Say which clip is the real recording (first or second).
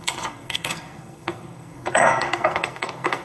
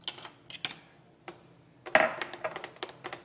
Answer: second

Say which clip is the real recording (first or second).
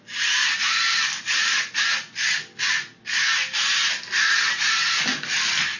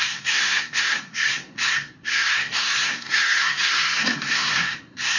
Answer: first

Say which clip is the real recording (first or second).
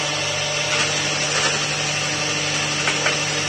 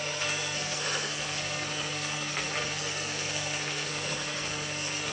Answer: first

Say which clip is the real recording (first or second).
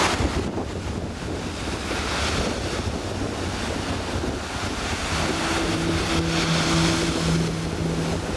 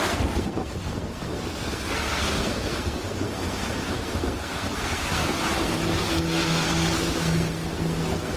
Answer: first